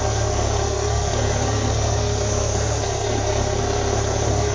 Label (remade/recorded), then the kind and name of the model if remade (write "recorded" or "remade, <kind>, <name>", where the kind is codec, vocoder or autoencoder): remade, codec, SNAC